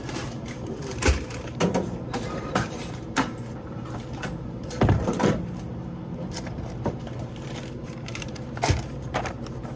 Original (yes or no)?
no